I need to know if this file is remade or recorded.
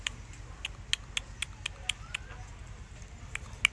recorded